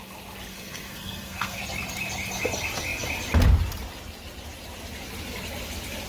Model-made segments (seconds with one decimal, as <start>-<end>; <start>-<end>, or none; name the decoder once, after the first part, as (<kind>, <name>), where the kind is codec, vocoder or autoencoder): 0.5-1.6 (codec, SNAC)